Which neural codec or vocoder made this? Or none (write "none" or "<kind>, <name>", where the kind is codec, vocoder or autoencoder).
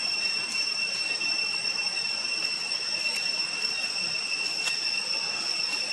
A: none